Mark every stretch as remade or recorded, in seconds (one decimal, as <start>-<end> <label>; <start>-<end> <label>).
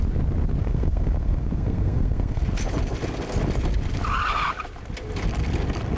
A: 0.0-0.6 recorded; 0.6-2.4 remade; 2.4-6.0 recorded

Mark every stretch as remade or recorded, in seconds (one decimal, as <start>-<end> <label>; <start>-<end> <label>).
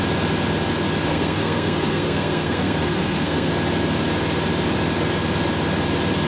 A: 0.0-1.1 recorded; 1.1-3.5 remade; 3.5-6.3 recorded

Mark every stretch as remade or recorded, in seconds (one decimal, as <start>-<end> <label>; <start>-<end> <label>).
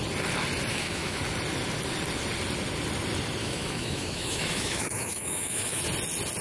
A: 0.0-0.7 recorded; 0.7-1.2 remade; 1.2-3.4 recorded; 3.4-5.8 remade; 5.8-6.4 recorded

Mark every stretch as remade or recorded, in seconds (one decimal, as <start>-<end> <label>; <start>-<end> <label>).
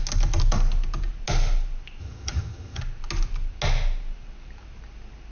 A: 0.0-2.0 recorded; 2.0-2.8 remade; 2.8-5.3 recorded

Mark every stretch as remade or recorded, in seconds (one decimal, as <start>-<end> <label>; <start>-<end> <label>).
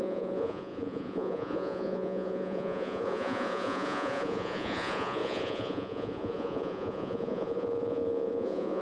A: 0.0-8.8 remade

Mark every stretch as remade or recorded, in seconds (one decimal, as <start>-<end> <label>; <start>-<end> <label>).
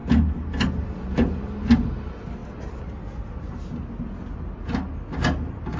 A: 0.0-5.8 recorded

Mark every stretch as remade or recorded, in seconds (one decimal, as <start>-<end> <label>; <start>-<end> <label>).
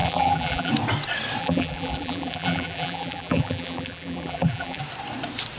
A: 0.0-0.7 remade; 0.7-1.4 recorded; 1.4-4.8 remade; 4.8-5.6 recorded